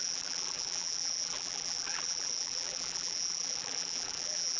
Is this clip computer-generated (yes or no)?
yes